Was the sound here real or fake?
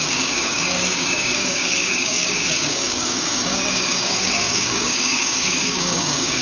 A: fake